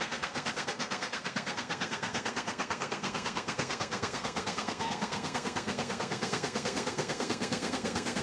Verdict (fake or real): fake